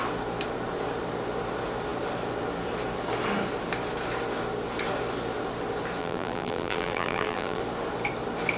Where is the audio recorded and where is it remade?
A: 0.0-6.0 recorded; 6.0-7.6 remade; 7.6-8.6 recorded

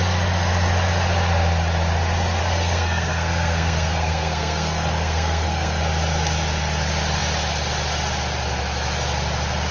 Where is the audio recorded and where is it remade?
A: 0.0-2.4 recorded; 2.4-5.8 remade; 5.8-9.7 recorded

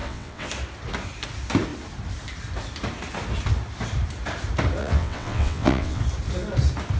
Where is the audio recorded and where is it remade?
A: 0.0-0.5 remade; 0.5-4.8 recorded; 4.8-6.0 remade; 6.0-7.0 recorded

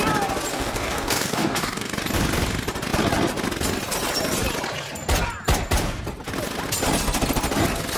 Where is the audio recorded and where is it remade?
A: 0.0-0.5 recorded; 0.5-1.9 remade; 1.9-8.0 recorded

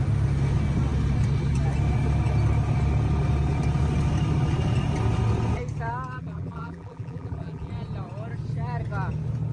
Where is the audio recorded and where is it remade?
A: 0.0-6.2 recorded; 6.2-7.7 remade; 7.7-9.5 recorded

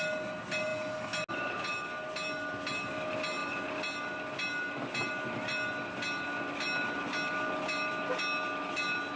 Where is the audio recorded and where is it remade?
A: 0.0-9.2 recorded